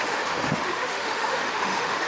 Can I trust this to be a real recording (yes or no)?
no